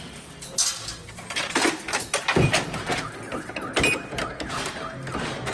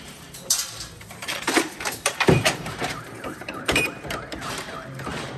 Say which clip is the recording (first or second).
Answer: first